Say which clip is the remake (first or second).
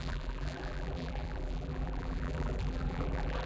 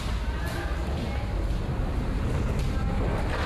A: first